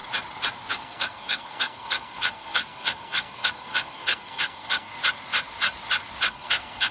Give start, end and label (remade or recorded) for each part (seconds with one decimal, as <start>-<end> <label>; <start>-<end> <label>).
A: 0.0-0.7 recorded; 0.7-5.0 remade; 5.0-6.3 recorded; 6.3-6.9 remade